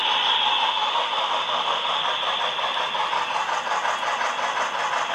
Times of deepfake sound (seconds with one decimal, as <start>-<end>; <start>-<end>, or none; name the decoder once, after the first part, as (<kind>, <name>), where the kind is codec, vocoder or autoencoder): 0.7-2.0 (autoencoder, DAC-VAE)